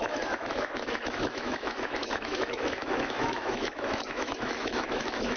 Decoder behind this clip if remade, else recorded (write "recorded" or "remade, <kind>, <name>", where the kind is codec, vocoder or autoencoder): remade, autoencoder, DAC-VAE